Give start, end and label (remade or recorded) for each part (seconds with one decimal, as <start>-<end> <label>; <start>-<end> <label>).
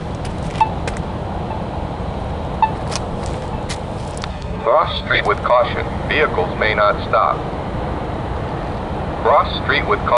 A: 0.0-4.3 recorded; 4.3-5.2 remade; 5.2-10.2 recorded